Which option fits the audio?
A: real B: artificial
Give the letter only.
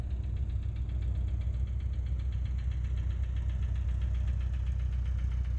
A